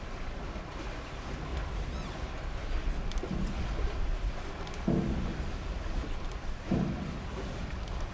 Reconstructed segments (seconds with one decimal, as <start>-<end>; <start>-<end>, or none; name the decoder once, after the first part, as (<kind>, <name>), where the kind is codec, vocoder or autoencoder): none